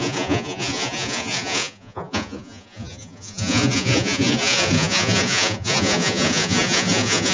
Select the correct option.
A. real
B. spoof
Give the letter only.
B